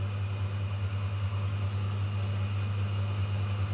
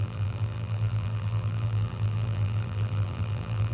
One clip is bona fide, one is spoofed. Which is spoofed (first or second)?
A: second